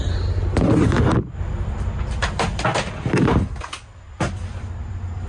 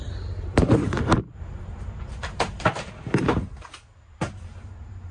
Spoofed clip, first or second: second